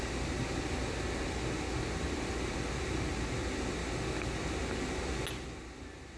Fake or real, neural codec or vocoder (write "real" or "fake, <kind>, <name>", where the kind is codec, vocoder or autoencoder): real